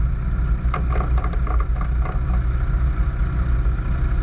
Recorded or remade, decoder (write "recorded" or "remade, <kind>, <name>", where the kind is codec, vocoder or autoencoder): recorded